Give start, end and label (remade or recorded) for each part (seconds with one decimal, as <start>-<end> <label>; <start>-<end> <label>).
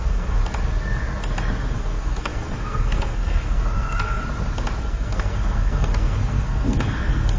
0.0-0.4 remade; 0.4-1.7 recorded; 1.7-4.2 remade; 4.2-4.8 recorded; 4.8-7.4 remade